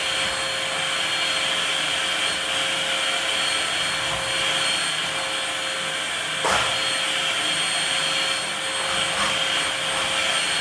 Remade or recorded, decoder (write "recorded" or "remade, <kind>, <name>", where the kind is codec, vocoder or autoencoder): recorded